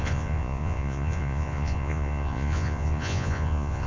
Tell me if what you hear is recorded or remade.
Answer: remade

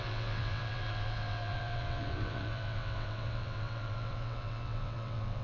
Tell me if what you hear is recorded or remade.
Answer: remade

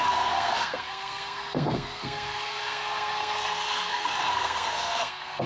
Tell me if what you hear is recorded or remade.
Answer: remade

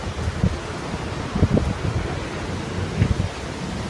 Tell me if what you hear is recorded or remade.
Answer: recorded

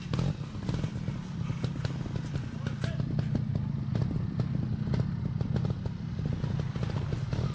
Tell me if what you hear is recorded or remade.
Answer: recorded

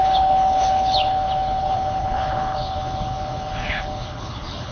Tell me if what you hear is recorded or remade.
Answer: remade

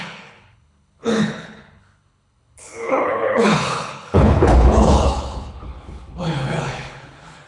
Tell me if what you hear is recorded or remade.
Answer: remade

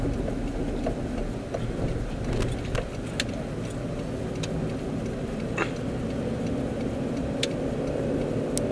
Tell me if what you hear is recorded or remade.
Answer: recorded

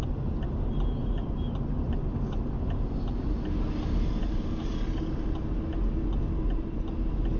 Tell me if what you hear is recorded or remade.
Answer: recorded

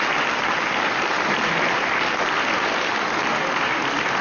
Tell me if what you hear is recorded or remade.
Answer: recorded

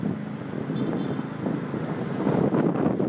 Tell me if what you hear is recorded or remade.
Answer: recorded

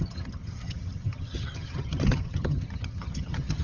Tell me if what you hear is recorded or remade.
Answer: remade